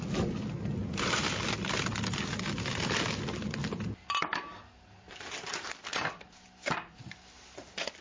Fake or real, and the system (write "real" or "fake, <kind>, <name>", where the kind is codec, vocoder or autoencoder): real